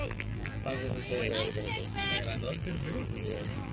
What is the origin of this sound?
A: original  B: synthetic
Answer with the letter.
B